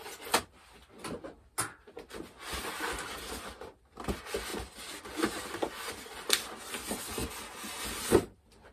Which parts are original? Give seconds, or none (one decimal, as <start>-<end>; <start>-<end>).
0.0-8.7